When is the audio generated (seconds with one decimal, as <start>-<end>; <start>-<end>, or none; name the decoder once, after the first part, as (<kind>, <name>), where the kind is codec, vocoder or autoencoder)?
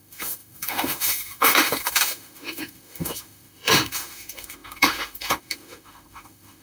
0.0-6.6 (autoencoder, DAC-VAE)